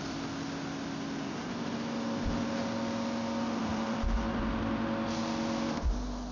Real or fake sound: real